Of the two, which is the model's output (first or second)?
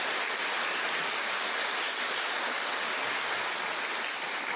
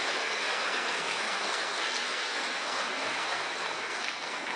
second